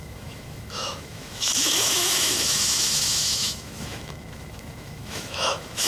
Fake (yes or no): yes